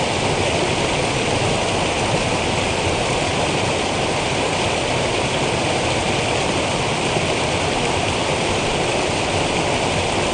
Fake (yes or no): no